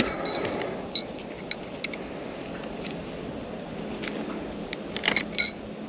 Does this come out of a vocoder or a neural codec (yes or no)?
no